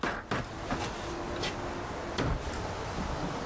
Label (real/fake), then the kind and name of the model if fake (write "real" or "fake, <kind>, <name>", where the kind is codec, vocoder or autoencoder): real